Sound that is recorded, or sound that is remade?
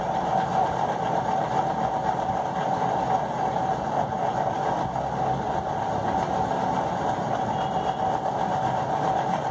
recorded